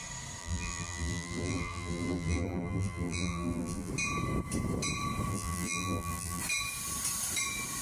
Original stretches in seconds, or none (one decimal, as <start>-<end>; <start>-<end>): 0.0-0.4; 3.9-5.3; 6.4-7.8